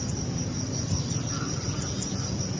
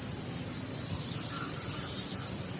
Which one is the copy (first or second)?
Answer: second